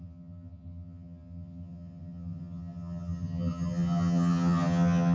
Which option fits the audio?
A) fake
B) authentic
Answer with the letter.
A